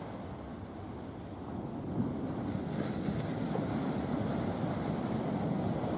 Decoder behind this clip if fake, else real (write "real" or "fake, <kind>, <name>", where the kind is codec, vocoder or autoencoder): real